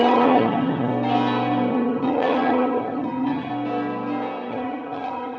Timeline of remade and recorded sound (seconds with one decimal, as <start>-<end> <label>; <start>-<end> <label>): 0.0-0.9 remade; 0.9-1.7 recorded; 1.7-3.5 remade; 3.5-4.5 recorded; 4.5-5.4 remade